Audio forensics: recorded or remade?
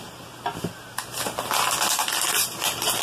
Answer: recorded